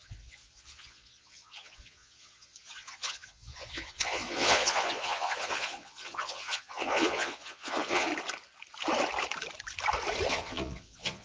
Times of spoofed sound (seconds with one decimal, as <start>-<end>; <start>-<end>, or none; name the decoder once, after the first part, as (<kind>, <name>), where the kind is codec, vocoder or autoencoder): 0.0-8.1 (vocoder, Vocos); 10.3-11.2